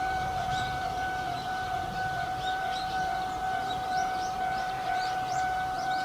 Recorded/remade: remade